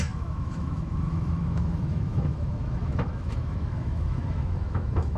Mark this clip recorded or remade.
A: remade